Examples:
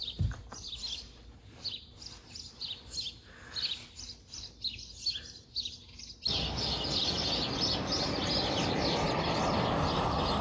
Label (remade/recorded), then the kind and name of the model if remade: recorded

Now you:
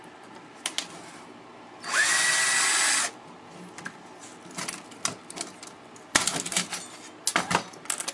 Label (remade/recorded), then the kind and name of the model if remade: recorded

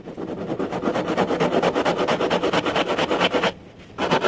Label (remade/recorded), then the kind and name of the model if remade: recorded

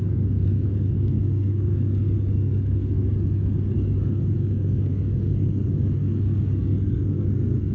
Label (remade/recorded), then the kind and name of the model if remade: remade, codec, SNAC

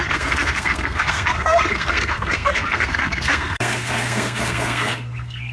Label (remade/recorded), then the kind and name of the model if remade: remade, codec, SNAC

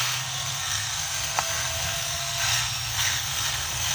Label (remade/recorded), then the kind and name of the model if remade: remade, codec, SNAC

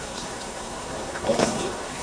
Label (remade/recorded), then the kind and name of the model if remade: remade, codec, SNAC